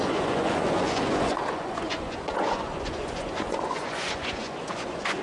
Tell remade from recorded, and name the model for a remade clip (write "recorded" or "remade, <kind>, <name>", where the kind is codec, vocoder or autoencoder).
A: remade, vocoder, Vocos